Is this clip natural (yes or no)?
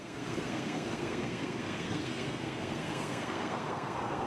no